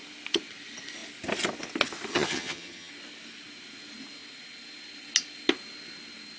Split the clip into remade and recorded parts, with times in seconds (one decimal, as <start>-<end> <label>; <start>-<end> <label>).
0.0-2.1 recorded; 2.1-2.9 remade; 2.9-6.4 recorded